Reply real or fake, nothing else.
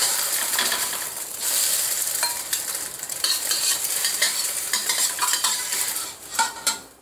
fake